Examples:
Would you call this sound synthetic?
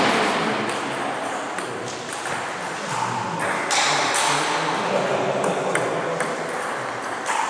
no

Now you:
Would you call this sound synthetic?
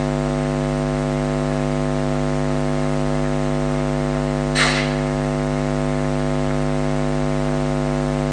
no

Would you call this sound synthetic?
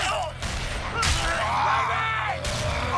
no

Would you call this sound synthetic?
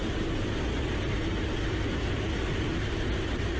no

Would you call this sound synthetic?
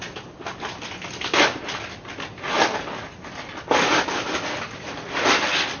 no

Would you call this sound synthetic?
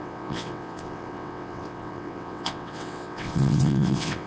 yes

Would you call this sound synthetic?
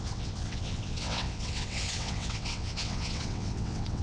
yes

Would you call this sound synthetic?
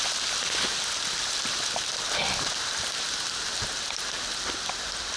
no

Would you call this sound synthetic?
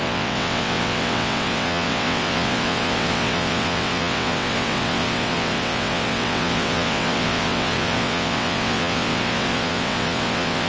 yes